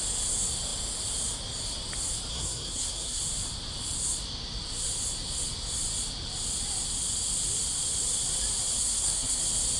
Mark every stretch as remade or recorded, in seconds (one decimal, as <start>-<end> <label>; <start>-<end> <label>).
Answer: 0.0-2.3 recorded; 2.3-3.2 remade; 3.2-8.8 recorded; 8.8-9.4 remade; 9.4-9.8 recorded